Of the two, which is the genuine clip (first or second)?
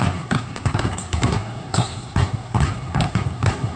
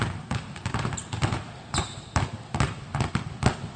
second